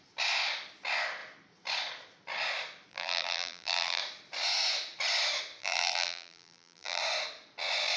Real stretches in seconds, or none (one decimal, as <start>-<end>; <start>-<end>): 0.0-2.9; 4.0-5.6; 7.0-8.0